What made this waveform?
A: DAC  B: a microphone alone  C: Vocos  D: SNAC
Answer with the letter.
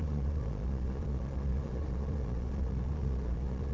C